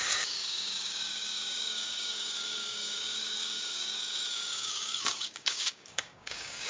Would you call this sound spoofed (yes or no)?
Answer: yes